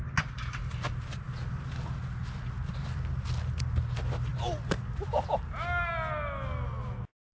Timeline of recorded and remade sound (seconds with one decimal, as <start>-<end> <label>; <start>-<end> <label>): 0.0-4.3 recorded; 4.3-5.4 remade; 5.4-7.3 recorded